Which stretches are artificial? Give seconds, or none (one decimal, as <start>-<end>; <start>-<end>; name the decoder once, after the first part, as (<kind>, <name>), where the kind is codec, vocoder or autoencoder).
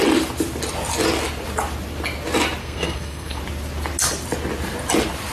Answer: 2.6-3.4 (codec, SNAC)